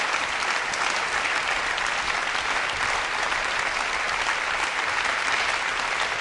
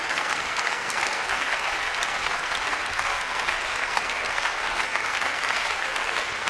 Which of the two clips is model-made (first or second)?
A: second